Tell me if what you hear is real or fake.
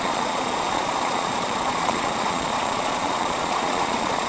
fake